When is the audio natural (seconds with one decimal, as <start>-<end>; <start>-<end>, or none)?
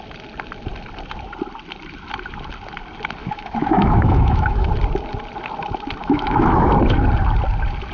0.0-3.2; 4.7-6.0; 6.7-7.9